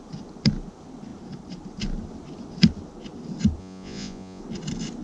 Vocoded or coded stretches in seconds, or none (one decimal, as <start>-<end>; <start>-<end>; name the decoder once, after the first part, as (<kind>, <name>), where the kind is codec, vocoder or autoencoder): 3.6-4.4 (vocoder, Vocos)